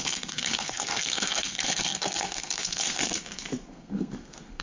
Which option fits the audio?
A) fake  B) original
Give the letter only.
A